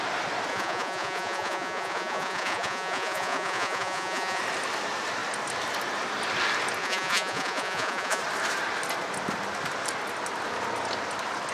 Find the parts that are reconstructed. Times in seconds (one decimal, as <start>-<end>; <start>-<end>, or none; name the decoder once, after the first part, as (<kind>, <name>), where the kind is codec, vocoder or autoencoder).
0.5-4.4 (vocoder, Vocos); 6.8-8.2